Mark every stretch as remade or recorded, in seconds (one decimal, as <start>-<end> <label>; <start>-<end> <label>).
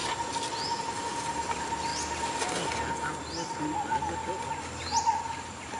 0.0-0.8 recorded; 0.8-1.9 remade; 1.9-5.2 recorded; 5.2-5.8 remade